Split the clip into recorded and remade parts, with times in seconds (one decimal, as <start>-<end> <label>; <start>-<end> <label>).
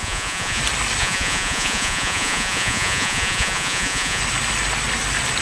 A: 0.0-0.6 remade; 0.6-1.0 recorded; 1.0-4.2 remade; 4.2-5.4 recorded